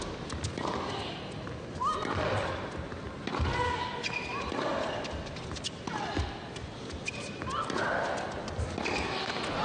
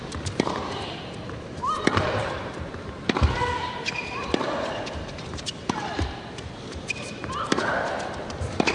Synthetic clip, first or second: second